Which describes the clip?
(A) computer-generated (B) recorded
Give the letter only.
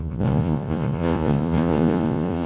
A